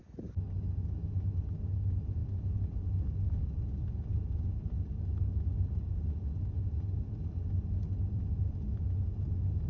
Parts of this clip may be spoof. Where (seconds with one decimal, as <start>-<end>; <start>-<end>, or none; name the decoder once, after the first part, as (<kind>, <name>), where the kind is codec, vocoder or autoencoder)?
none